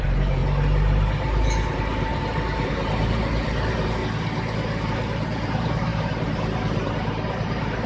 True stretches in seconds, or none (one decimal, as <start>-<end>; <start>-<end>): 0.4-1.7; 4.0-4.8